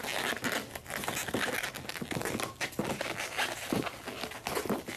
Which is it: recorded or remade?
recorded